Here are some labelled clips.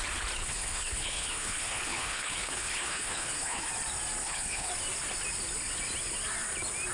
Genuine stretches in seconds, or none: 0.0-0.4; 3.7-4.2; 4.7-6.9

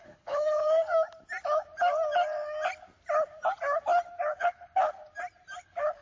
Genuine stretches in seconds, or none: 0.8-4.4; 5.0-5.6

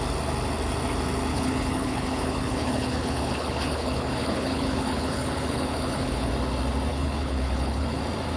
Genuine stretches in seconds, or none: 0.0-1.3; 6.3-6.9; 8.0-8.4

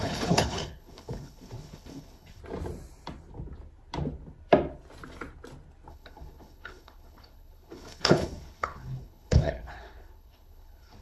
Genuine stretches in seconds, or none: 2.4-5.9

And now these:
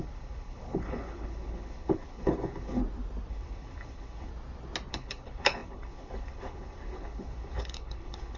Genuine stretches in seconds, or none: 2.8-3.3; 4.3-4.9